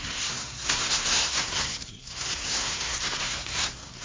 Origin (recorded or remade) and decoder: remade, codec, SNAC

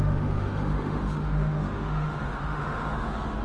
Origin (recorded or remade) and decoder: remade, autoencoder, DAC-VAE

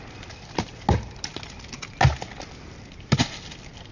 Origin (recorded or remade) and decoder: recorded